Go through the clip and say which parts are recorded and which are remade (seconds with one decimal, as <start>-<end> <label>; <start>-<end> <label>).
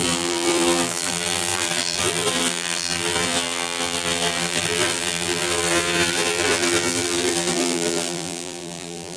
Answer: 0.0-9.2 remade